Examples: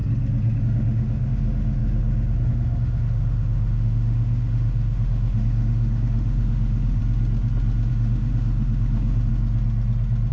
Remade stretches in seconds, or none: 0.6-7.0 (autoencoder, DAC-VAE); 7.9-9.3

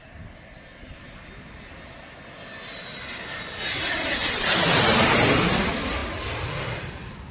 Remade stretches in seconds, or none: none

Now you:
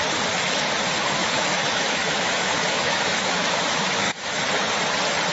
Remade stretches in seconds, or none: 1.2-4.4 (autoencoder, DAC-VAE)

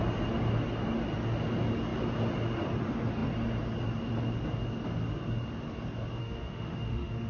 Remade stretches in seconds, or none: 6.2-7.3 (autoencoder, DAC-VAE)

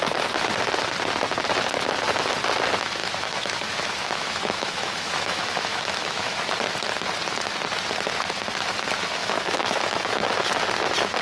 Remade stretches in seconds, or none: 3.0-6.4 (autoencoder, DAC-VAE); 9.2-10.5